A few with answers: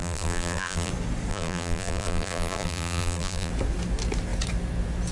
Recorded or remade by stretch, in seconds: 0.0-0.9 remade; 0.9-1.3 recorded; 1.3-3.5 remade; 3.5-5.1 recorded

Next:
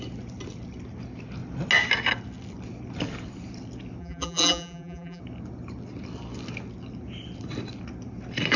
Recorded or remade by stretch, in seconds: 0.0-4.0 recorded; 4.0-5.2 remade; 5.2-8.6 recorded

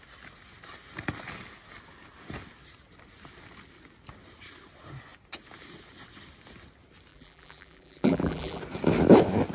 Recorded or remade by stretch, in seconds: 0.0-7.1 recorded; 7.1-8.6 remade; 8.6-9.5 recorded

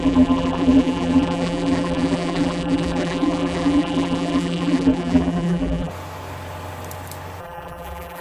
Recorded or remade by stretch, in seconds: 0.0-5.9 remade; 5.9-7.4 recorded; 7.4-8.2 remade

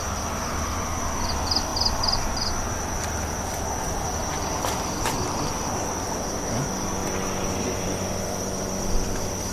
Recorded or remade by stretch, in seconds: 0.0-1.7 recorded; 1.7-5.7 remade; 5.7-7.0 recorded; 7.0-8.1 remade; 8.1-9.5 recorded